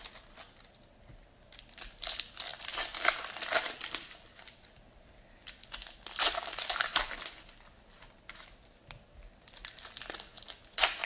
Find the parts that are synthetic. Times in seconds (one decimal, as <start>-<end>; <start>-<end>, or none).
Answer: 2.5-5.5; 6.2-7.1